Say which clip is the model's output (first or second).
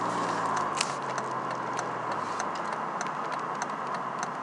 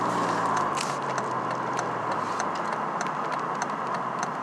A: second